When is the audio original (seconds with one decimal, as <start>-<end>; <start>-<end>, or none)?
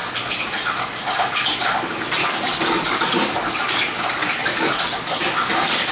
0.0-2.2; 3.8-4.2; 5.3-5.9